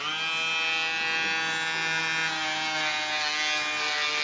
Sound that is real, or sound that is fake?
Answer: real